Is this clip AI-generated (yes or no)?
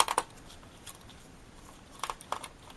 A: yes